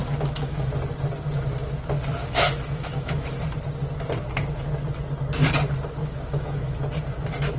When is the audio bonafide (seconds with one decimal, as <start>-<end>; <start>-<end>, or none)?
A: 0.7-2.2; 3.4-6.0; 6.8-7.6